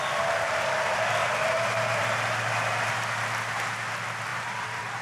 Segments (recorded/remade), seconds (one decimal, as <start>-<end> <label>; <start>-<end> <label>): 0.0-1.2 recorded; 1.2-2.0 remade; 2.0-4.3 recorded; 4.3-5.0 remade